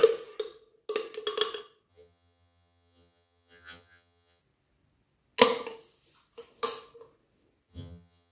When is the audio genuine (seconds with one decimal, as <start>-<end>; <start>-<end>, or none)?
0.0-1.9; 4.4-7.7